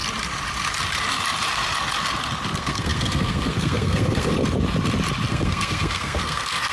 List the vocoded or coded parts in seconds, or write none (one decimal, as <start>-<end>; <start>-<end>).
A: 2.5-4.3; 5.3-6.7